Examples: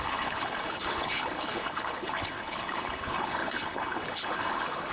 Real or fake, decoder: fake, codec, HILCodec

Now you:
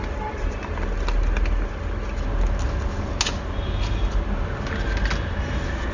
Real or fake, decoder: real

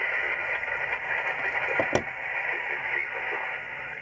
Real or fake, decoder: real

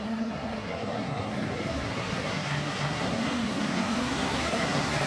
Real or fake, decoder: fake, codec, SNAC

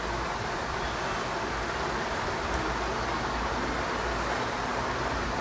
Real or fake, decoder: real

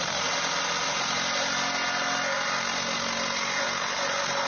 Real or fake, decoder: real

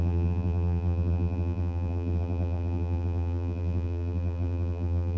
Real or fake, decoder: fake, vocoder, BigVGAN v2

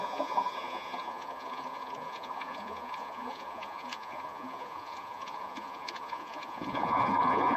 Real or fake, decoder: fake, vocoder, Vocos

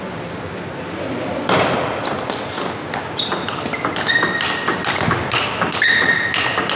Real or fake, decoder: real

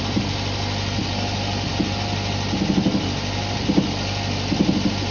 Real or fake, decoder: real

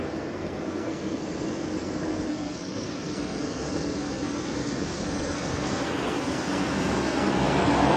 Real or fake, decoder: fake, codec, SNAC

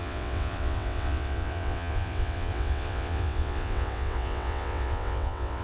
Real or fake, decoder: fake, vocoder, WaveNeXt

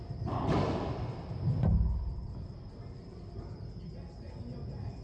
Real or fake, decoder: real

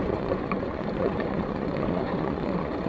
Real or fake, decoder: fake, vocoder, Vocos